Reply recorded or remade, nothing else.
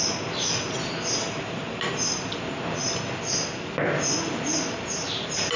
recorded